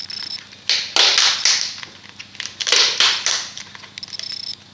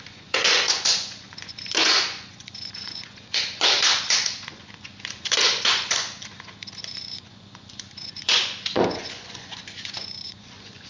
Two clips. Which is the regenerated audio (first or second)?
second